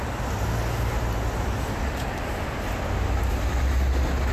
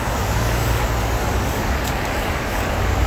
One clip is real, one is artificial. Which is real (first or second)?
first